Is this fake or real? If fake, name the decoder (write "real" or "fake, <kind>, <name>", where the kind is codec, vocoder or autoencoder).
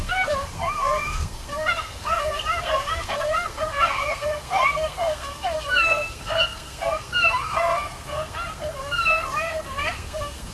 fake, codec, SNAC